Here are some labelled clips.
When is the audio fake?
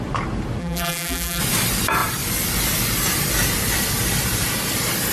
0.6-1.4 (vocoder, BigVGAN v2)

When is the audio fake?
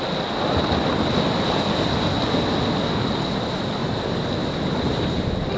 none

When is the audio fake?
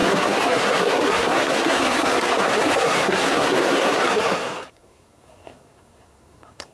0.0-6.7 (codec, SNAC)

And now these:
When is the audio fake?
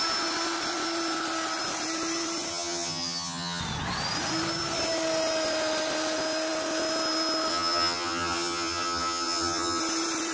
2.5-3.6 (vocoder, HiFi-GAN); 7.5-9.8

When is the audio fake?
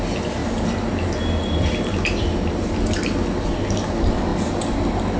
none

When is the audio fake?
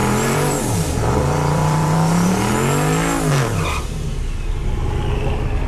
0.0-2.5 (vocoder, BigVGAN v2)